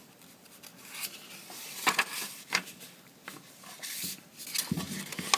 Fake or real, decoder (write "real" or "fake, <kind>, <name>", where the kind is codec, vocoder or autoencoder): real